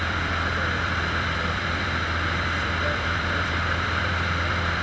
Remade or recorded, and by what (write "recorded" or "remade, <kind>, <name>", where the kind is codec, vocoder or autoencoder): remade, vocoder, BigVGAN v2